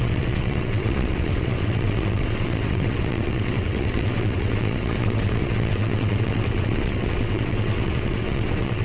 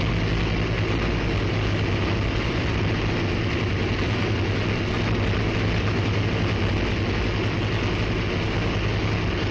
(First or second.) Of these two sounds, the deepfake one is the first